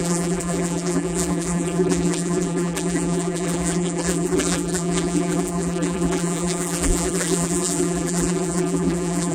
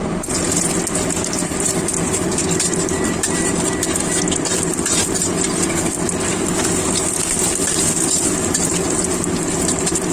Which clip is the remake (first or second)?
first